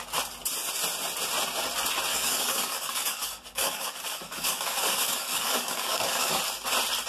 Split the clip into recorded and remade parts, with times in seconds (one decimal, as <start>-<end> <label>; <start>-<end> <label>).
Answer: 0.0-2.1 recorded; 2.1-6.4 remade; 6.4-7.1 recorded

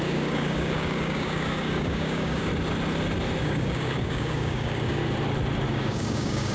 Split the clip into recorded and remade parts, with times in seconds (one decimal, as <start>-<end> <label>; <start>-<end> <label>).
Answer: 0.0-2.5 remade; 2.5-3.4 recorded; 3.4-5.0 remade; 5.0-5.7 recorded; 5.7-6.5 remade

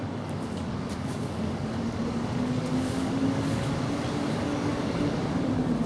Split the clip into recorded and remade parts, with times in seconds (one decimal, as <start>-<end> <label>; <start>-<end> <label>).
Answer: 0.0-5.9 remade